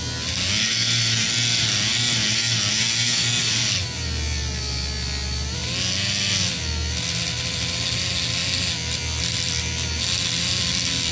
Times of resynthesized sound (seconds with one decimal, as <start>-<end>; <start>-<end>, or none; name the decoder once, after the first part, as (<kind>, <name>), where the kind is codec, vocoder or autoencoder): none